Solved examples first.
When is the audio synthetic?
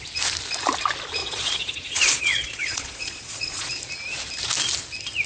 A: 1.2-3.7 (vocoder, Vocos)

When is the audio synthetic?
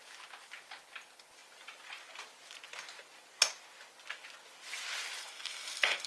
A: 5.2-6.1 (codec, SNAC)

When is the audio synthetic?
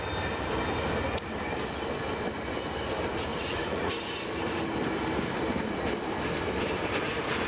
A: 3.3-3.9 (vocoder, Vocos)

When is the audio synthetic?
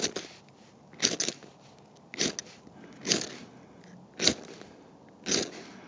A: none